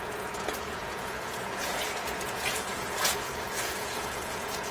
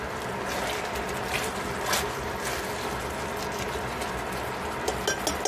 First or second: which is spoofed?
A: first